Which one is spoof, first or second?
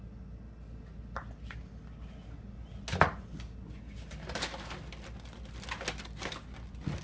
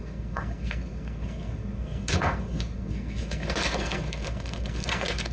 second